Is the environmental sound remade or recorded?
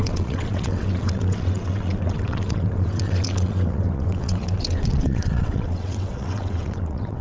remade